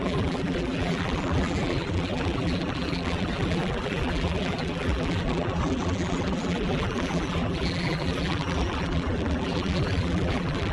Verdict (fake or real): fake